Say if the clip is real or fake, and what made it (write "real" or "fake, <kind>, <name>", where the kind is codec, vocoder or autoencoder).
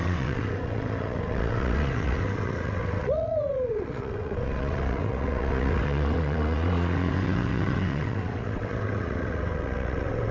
fake, vocoder, WaveNeXt